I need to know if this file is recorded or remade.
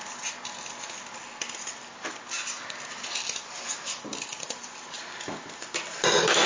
recorded